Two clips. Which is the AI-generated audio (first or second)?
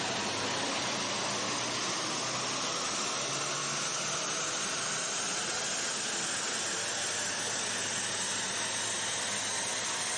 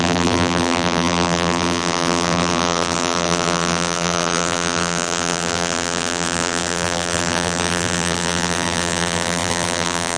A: second